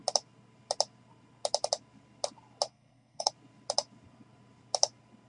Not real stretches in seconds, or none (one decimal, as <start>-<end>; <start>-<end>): 2.7-3.3